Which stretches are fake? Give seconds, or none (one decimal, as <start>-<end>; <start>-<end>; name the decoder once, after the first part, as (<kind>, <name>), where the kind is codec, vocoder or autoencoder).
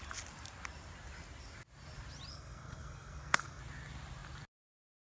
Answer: 2.3-3.6 (codec, SNAC)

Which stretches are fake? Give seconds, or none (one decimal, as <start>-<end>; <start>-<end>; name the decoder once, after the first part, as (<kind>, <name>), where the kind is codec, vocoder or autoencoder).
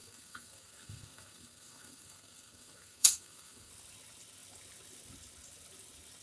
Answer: 0.0-3.7 (codec, SNAC)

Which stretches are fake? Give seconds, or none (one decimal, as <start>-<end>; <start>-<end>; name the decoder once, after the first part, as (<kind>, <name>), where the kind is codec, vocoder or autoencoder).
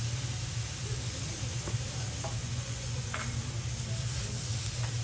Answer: 2.4-3.2 (vocoder, Vocos)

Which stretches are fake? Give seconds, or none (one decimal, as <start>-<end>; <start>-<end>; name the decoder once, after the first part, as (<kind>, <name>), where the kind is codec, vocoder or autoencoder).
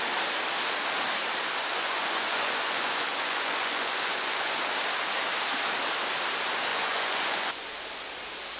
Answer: 1.7-4.7 (vocoder, Vocos); 6.7-7.7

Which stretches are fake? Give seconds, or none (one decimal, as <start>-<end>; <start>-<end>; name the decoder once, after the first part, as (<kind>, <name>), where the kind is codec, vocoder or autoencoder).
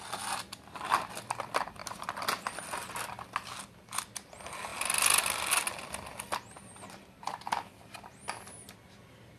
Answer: none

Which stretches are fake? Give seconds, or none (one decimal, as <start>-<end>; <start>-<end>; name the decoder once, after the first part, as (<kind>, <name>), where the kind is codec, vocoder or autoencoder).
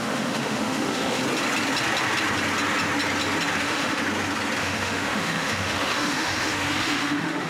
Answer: 0.0-1.2 (autoencoder, DAC-VAE); 3.6-4.0; 4.6-7.5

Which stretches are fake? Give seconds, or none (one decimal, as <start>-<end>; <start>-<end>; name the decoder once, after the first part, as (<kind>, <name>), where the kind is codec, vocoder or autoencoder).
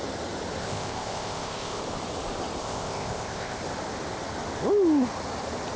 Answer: 0.6-1.8 (codec, ZipCodec); 2.6-3.6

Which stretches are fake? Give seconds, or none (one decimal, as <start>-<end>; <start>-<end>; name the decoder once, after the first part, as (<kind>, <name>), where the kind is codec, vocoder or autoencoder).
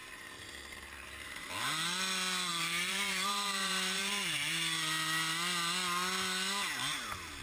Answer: 0.0-1.5 (vocoder, BigVGAN v2); 2.5-4.6